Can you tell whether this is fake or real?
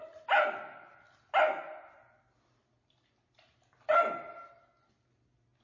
real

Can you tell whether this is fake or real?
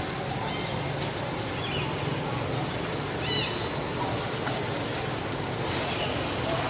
real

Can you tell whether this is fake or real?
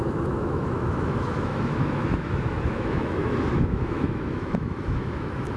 fake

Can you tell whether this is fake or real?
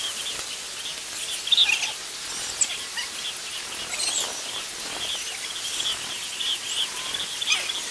real